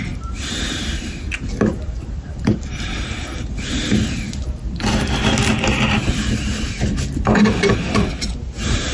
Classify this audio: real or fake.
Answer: real